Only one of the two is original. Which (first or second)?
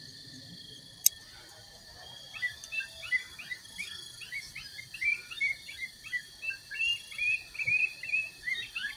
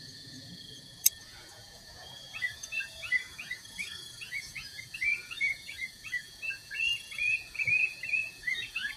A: first